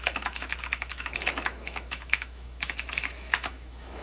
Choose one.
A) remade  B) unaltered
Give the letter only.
A